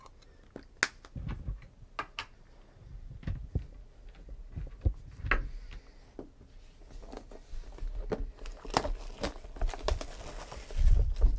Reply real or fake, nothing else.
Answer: real